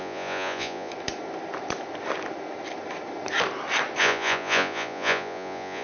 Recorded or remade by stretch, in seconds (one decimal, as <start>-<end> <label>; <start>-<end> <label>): 0.0-0.9 remade; 0.9-4.0 recorded; 4.0-5.8 remade